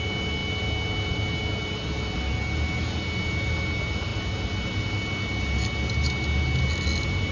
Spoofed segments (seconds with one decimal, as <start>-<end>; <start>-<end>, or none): none